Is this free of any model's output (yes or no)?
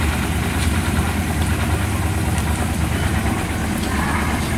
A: yes